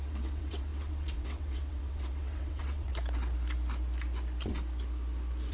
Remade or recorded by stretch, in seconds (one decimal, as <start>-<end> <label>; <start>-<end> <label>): 0.0-2.9 remade; 2.9-5.5 recorded